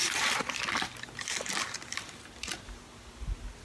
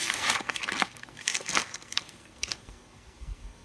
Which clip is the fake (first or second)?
second